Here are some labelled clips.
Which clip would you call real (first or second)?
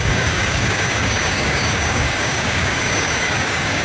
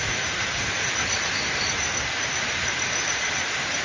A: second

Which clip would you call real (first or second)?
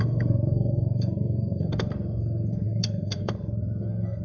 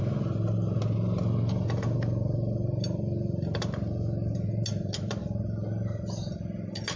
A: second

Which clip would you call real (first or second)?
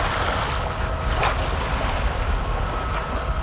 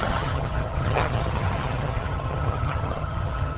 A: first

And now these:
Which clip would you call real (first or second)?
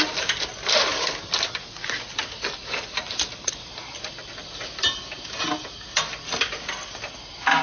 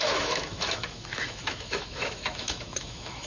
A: first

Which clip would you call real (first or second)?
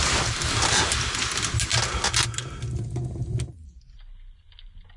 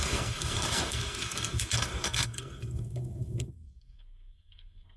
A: first